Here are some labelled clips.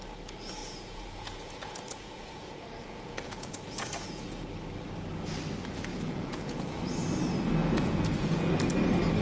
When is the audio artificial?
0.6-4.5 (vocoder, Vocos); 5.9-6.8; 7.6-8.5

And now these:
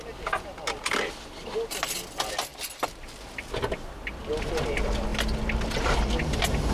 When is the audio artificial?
none